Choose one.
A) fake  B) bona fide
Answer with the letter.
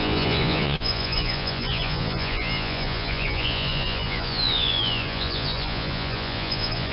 A